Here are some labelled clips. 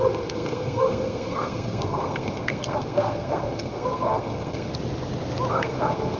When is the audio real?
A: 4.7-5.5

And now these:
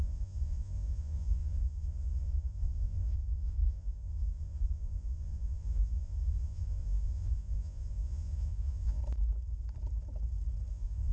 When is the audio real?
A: 9.0-10.7

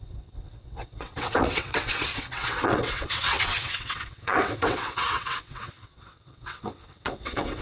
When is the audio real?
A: none